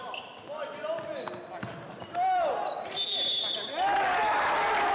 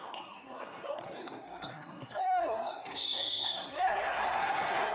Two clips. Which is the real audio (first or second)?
first